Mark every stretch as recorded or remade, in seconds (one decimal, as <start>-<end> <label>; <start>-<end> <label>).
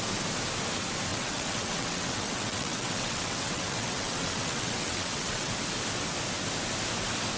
0.0-1.1 recorded; 1.1-5.5 remade; 5.5-7.4 recorded